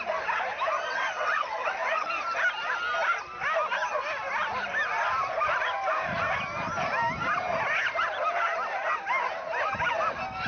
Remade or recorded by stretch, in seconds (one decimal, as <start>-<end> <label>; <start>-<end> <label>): 0.0-0.8 recorded; 0.8-2.1 remade; 2.1-10.5 recorded